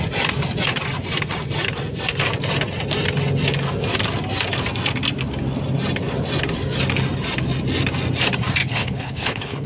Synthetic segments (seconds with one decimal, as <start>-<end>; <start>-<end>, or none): 8.6-9.7